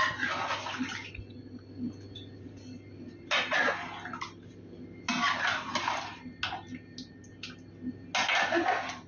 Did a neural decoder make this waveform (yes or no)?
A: no